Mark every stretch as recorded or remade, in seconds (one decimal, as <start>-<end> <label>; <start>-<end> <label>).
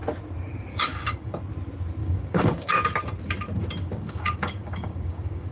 0.0-0.7 recorded; 0.7-1.4 remade; 1.4-2.0 recorded; 2.0-2.7 remade; 2.7-3.8 recorded; 3.8-5.5 remade